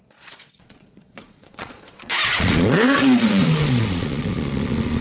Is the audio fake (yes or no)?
yes